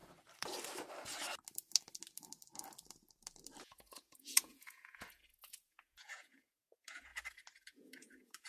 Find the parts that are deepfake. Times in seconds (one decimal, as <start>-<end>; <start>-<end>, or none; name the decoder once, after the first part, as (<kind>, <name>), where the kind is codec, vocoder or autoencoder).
3.6-7.1 (vocoder, Vocos); 7.6-8.5